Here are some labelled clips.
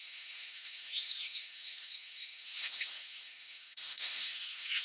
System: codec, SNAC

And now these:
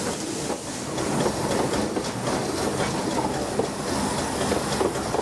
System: none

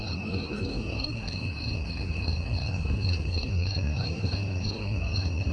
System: codec, SNAC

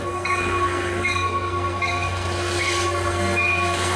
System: codec, SNAC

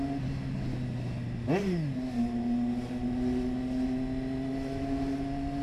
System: none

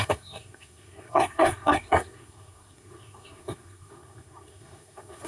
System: codec, SNAC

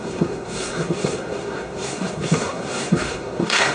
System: codec, SNAC